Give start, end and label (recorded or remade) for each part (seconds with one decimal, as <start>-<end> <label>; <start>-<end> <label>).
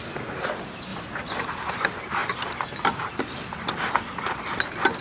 0.0-5.0 recorded